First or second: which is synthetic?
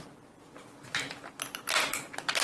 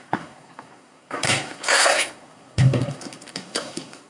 second